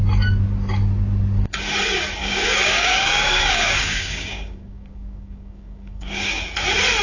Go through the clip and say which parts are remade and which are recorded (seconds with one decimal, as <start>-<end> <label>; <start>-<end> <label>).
0.0-2.2 recorded; 2.2-6.4 remade; 6.4-7.0 recorded